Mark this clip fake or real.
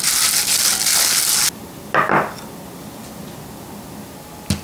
real